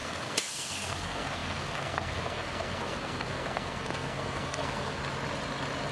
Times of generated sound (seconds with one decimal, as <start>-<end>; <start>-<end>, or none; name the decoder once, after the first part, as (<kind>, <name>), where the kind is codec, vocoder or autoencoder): 0.0-5.0 (codec, SNAC)

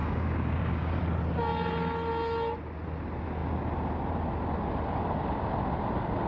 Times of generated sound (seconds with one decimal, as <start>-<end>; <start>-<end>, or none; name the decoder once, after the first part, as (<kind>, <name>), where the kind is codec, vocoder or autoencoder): 0.0-1.0 (codec, DAC)